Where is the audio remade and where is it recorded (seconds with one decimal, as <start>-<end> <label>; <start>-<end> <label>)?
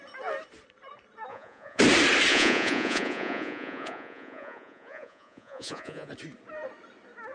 0.0-1.3 recorded; 1.3-1.8 remade; 1.8-2.3 recorded; 2.3-6.1 remade; 6.1-7.3 recorded